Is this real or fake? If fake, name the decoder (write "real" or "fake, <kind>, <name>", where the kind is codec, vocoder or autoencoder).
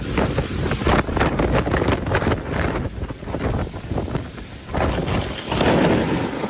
real